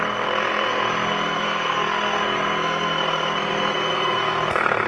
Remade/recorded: remade